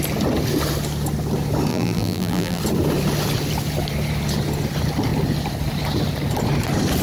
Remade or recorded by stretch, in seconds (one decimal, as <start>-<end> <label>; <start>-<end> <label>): 0.0-1.7 recorded; 1.7-2.6 remade; 2.6-7.0 recorded